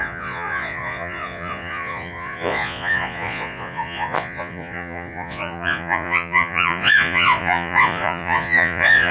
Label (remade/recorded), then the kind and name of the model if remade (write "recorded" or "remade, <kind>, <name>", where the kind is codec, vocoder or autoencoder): remade, vocoder, Vocos